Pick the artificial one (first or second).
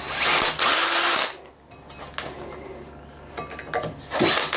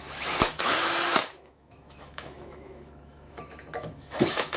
second